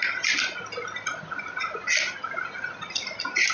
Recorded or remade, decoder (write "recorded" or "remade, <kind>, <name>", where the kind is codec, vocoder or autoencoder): recorded